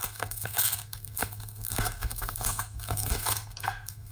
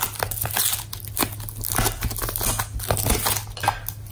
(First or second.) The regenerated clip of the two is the first